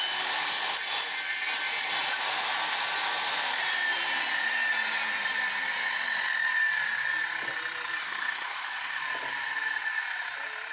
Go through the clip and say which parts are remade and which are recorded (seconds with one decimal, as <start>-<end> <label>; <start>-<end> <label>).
0.0-8.0 recorded; 8.0-9.0 remade; 9.0-10.7 recorded